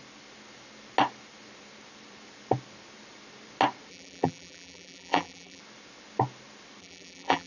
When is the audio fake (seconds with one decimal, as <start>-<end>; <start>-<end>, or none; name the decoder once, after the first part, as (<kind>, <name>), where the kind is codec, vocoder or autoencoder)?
3.9-5.6 (vocoder, BigVGAN v2); 6.8-7.5